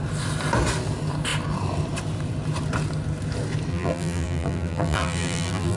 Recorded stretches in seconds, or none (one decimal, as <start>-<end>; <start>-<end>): 0.0-3.7